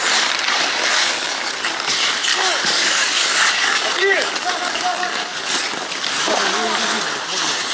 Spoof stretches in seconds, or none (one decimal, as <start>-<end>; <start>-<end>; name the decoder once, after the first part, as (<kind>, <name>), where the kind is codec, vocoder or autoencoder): 0.9-1.5 (codec, DAC); 2.3-5.5